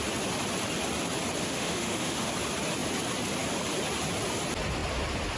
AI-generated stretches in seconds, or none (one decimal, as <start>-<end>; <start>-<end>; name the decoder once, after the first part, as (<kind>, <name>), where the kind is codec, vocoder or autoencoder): 1.4-2.3 (autoencoder, DAC-VAE)